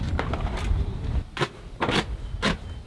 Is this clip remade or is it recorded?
recorded